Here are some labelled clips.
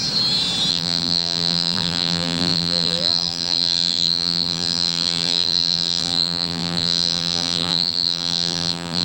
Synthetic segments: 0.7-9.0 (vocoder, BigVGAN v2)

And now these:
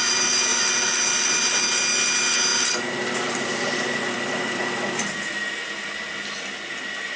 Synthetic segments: 2.5-4.7 (vocoder, BigVGAN v2)

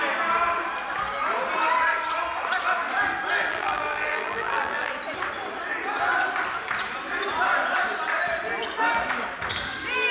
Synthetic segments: 3.5-4.9 (vocoder, BigVGAN v2)